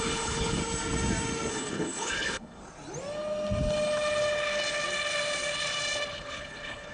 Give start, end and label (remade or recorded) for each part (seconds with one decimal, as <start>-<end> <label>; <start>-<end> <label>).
0.0-0.6 remade; 0.6-1.5 recorded; 1.5-2.6 remade; 2.6-6.1 recorded; 6.1-6.9 remade